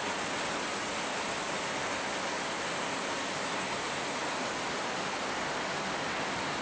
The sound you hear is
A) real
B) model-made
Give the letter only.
A